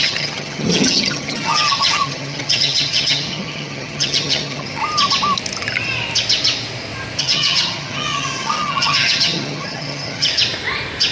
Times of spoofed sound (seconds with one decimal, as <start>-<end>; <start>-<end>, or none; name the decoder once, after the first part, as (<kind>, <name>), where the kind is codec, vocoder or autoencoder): 0.0-4.8 (vocoder, HiFi-GAN); 7.2-10.3